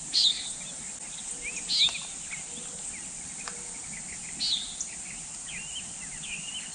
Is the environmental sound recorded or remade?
recorded